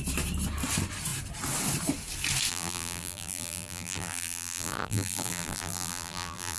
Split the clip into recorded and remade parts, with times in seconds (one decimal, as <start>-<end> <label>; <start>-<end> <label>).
0.0-2.5 recorded; 2.5-6.6 remade